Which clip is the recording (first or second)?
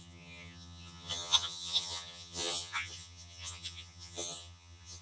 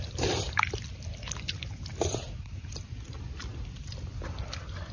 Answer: second